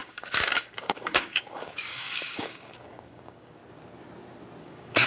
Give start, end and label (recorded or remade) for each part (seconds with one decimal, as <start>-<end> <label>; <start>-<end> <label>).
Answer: 0.0-3.6 remade; 3.6-4.6 recorded; 4.6-5.1 remade